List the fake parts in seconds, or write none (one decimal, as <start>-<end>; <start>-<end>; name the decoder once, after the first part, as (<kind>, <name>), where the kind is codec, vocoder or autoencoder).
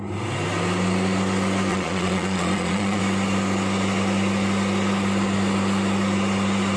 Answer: 1.7-3.0 (vocoder, Vocos)